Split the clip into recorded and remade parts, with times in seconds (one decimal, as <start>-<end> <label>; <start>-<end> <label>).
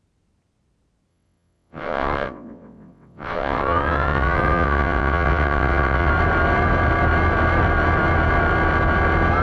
0.0-1.1 recorded; 1.1-6.1 remade; 6.1-9.4 recorded